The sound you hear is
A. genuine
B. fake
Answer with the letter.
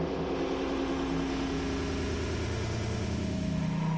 B